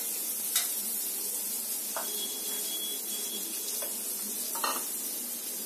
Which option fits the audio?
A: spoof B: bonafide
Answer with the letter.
B